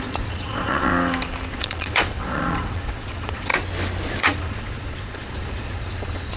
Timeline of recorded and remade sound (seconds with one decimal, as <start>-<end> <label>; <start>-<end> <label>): 0.0-0.9 remade; 0.9-1.5 recorded; 1.5-3.5 remade; 3.5-4.2 recorded; 4.2-6.4 remade